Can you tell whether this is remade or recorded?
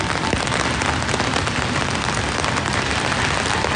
recorded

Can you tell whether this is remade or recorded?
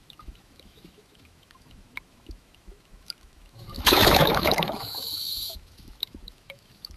remade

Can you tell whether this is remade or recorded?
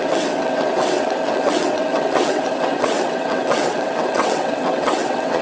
remade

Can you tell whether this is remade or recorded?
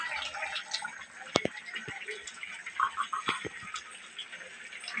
recorded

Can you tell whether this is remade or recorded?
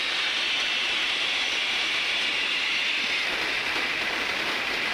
recorded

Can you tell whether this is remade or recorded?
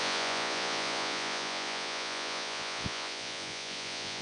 remade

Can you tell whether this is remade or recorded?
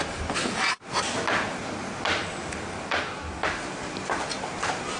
recorded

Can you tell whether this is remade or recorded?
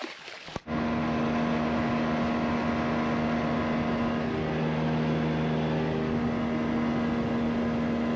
recorded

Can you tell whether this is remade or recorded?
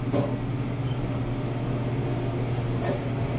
recorded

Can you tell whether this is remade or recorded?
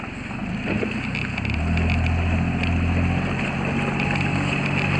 recorded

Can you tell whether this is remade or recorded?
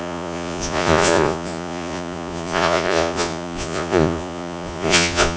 remade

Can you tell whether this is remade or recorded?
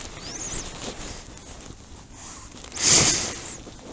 recorded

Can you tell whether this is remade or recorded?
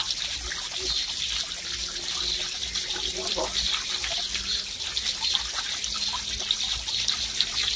recorded